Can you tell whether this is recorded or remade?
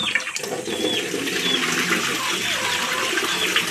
recorded